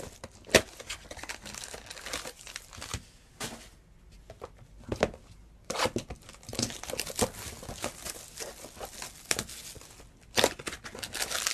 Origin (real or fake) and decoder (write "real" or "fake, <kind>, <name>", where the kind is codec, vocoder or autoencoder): real